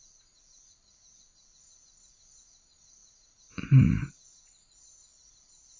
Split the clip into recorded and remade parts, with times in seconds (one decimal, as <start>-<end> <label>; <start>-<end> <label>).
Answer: 0.0-5.8 recorded